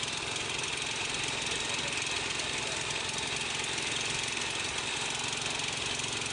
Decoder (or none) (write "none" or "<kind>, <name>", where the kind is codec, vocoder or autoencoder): none